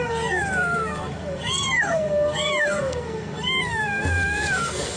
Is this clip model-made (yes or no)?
yes